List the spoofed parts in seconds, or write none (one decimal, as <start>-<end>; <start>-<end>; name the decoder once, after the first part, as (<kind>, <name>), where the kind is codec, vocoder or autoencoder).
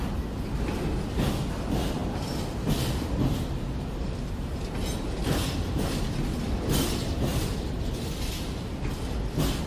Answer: 7.3-7.9 (vocoder, BigVGAN v2)